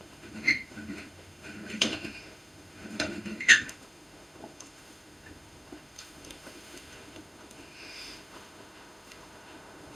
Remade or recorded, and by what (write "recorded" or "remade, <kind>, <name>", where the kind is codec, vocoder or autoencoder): remade, autoencoder, DAC-VAE